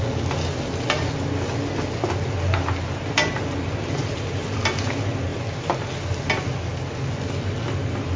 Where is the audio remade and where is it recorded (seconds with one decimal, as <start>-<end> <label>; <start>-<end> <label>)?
0.0-8.2 recorded